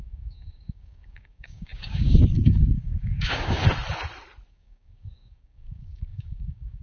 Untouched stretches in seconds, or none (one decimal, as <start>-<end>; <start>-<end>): 3.6-4.5